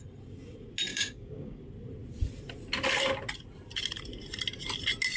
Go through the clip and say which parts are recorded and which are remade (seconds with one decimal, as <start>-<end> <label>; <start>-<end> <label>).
0.0-0.9 recorded; 0.9-1.6 remade; 1.6-5.2 recorded